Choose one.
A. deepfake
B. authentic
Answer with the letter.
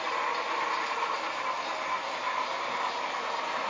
B